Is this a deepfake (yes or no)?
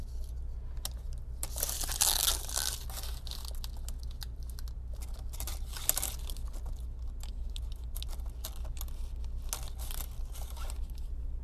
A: no